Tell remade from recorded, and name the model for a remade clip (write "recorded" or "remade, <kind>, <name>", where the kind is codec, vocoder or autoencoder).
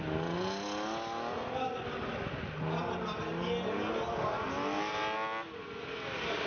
recorded